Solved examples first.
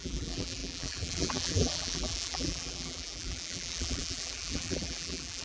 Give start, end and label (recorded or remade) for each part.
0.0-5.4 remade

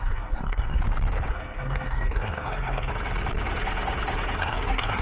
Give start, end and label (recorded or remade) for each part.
0.0-0.8 remade; 0.8-1.3 recorded; 1.3-2.9 remade; 2.9-4.4 recorded; 4.4-5.0 remade